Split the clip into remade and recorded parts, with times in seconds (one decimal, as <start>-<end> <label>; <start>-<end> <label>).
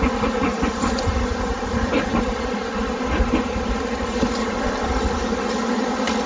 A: 0.0-0.5 recorded; 0.5-2.5 remade; 2.5-6.3 recorded